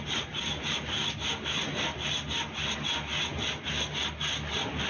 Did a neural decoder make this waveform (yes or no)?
no